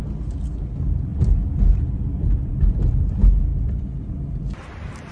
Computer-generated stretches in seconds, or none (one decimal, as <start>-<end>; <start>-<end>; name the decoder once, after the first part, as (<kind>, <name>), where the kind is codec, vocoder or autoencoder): 1.1-2.7 (vocoder, BigVGAN v2)

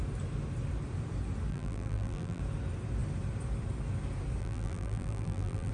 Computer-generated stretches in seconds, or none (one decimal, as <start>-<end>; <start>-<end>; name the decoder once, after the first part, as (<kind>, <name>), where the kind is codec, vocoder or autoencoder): 1.5-2.4 (vocoder, BigVGAN v2); 4.4-5.7